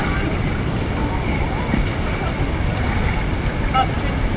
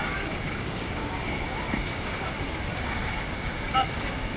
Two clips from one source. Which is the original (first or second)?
first